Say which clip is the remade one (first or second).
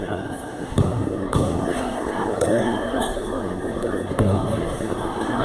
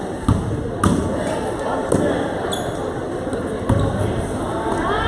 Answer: first